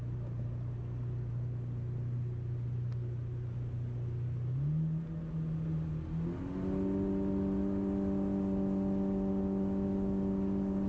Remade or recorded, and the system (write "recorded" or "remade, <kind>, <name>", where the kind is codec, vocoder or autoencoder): recorded